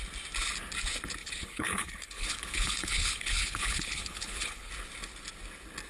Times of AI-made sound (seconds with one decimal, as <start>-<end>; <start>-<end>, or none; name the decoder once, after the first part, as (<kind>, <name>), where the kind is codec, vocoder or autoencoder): 1.2-4.7 (codec, HILCodec)